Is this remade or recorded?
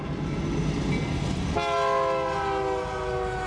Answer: recorded